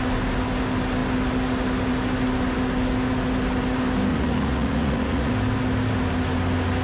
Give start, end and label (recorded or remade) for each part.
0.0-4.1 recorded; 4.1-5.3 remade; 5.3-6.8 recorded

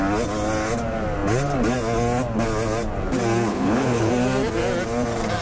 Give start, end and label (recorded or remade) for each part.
0.0-3.5 recorded; 3.5-4.1 remade; 4.1-5.4 recorded

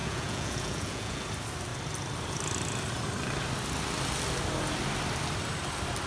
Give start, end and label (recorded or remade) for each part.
0.0-1.2 remade; 1.2-6.1 recorded

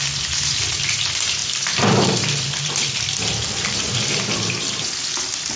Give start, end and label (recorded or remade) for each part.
0.0-5.6 remade

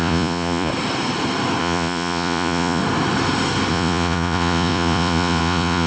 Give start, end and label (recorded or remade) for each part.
0.0-0.7 remade; 0.7-1.6 recorded; 1.6-2.8 remade; 2.8-3.7 recorded; 3.7-5.9 remade

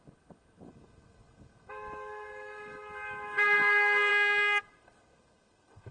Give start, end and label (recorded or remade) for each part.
0.0-4.1 remade; 4.1-4.6 recorded; 4.6-5.9 remade